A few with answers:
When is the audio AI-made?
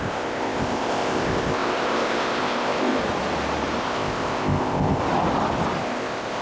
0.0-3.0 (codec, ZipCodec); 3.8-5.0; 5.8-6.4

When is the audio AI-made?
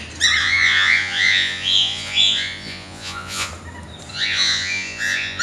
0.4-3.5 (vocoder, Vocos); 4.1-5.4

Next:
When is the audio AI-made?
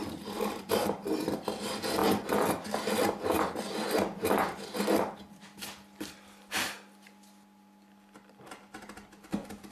0.0-0.7 (vocoder, BigVGAN v2)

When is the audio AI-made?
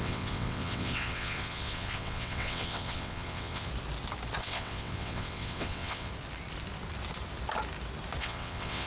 0.0-3.7 (vocoder, WaveNeXt); 4.4-6.1; 8.2-8.9